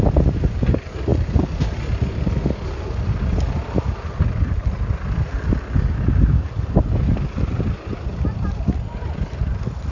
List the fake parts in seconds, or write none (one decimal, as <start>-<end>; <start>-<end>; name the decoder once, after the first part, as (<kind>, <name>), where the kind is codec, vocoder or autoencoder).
none